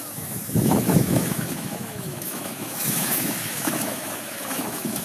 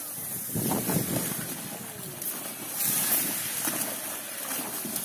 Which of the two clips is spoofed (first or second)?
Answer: first